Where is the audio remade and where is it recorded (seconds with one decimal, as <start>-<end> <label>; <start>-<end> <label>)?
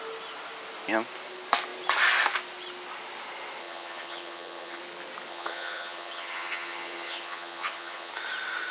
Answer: 0.0-3.6 recorded; 3.6-4.8 remade; 4.8-5.3 recorded; 5.3-8.1 remade; 8.1-8.7 recorded